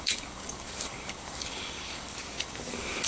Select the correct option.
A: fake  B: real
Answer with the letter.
A